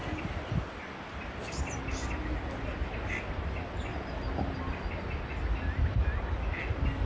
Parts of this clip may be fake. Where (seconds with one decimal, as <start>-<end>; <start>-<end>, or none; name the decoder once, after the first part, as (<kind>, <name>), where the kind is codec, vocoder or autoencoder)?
0.0-0.8 (vocoder, BigVGAN v2); 3.9-5.0

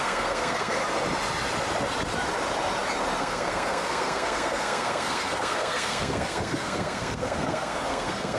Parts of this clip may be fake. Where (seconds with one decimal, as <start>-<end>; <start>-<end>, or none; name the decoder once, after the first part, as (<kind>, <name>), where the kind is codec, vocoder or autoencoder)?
0.0-0.8 (codec, SNAC); 3.2-8.4

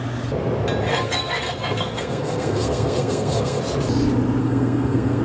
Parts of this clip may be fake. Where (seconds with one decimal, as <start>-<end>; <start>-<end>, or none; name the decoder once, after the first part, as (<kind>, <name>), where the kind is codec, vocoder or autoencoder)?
0.9-3.6 (codec, SNAC); 4.4-5.2